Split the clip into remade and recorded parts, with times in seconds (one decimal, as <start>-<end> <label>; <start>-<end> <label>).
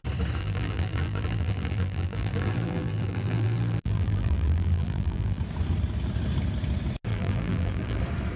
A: 0.0-0.4 recorded; 0.4-5.4 remade; 5.4-7.1 recorded; 7.1-8.0 remade; 8.0-8.4 recorded